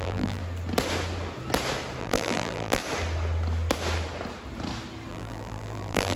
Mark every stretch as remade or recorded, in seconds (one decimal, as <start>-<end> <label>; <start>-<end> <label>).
0.0-0.4 remade; 0.4-2.0 recorded; 2.0-2.8 remade; 2.8-5.1 recorded; 5.1-6.2 remade

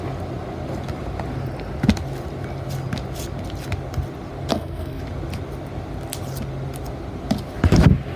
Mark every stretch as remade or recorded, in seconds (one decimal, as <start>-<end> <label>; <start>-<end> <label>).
0.0-4.5 recorded; 4.5-5.0 remade; 5.0-8.2 recorded

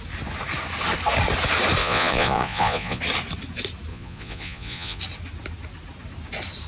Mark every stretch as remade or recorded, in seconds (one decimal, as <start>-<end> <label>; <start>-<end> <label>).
0.0-1.8 recorded; 1.8-3.0 remade; 3.0-3.9 recorded; 3.9-5.0 remade; 5.0-6.7 recorded

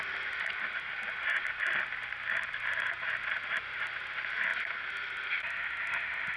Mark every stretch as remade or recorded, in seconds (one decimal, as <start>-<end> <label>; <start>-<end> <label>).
0.0-6.4 recorded

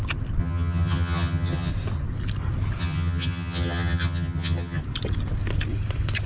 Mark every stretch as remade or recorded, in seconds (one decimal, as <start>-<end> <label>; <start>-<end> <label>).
0.0-0.4 recorded; 0.4-1.7 remade; 1.7-2.8 recorded; 2.8-4.8 remade; 4.8-6.3 recorded

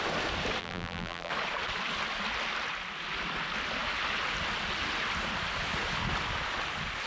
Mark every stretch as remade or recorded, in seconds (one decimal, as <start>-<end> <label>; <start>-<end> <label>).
0.0-0.6 recorded; 0.6-1.3 remade; 1.3-7.1 recorded

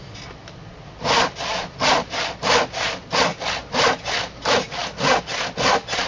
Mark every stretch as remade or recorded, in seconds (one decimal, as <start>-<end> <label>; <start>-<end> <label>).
0.0-6.1 recorded

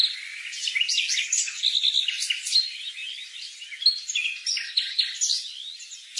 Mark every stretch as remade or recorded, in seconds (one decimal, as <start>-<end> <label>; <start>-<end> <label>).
0.0-6.2 recorded